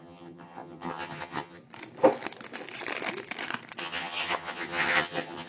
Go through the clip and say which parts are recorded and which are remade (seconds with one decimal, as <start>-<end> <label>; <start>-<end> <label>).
0.0-1.6 remade; 1.6-3.8 recorded; 3.8-5.5 remade

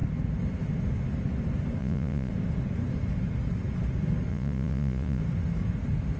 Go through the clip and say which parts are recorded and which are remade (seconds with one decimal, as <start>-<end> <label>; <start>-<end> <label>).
0.0-1.8 recorded; 1.8-2.3 remade; 2.3-4.3 recorded; 4.3-5.2 remade; 5.2-6.2 recorded

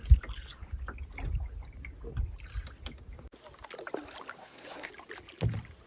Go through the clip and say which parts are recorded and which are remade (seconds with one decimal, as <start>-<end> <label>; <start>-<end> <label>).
0.0-4.4 recorded; 4.4-4.9 remade; 4.9-5.9 recorded

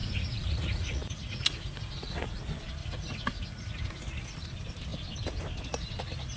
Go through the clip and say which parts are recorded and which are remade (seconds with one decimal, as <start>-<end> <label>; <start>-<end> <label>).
0.0-2.4 remade; 2.4-2.8 recorded; 2.8-3.8 remade; 3.8-6.4 recorded

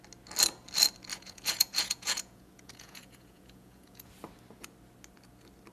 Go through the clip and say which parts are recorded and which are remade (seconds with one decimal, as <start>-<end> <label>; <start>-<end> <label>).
0.0-1.1 recorded; 1.1-4.1 remade; 4.1-5.7 recorded